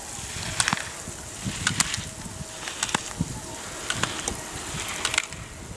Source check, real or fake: real